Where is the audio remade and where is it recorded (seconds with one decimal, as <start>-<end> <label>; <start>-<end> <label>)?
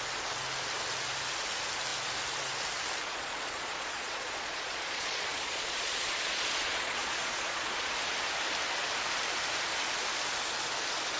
0.0-3.0 recorded; 3.0-8.1 remade; 8.1-11.2 recorded